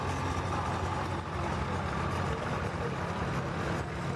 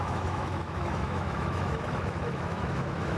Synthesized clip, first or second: second